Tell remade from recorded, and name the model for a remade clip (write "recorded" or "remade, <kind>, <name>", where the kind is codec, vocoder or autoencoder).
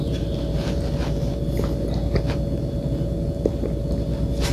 recorded